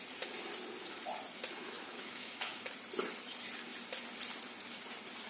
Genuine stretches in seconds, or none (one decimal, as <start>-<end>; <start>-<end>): 0.0-1.6; 2.7-5.3